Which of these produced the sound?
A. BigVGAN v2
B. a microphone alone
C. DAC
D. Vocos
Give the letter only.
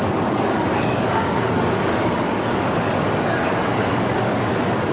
C